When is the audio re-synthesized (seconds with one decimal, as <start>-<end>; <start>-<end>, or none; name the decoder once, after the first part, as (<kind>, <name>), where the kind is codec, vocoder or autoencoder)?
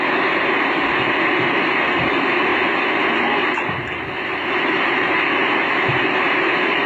none